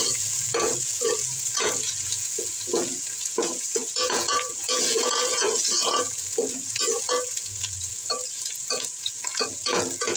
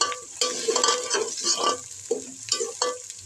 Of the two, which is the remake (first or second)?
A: first